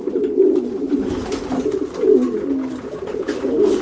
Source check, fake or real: real